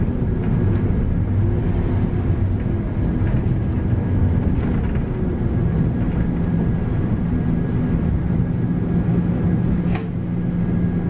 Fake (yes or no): no